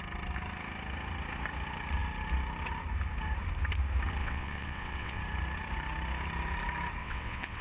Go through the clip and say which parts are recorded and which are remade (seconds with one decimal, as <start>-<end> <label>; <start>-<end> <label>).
0.0-4.2 recorded; 4.2-5.2 remade; 5.2-7.0 recorded; 7.0-7.6 remade